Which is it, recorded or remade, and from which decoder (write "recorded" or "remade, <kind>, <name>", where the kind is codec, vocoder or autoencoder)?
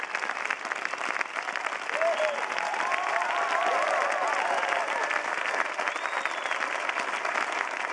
recorded